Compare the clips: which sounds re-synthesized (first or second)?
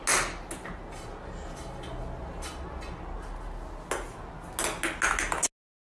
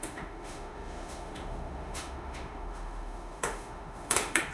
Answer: second